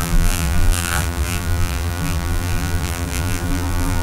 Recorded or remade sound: remade